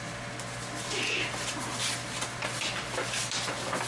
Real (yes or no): yes